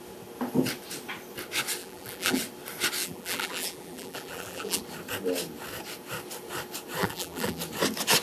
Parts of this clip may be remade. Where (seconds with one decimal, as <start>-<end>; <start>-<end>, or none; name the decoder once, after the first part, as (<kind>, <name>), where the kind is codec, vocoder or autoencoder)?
1.8-2.4 (vocoder, BigVGAN v2); 3.0-4.8; 7.0-7.6